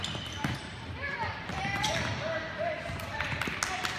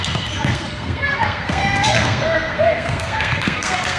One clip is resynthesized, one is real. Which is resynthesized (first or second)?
second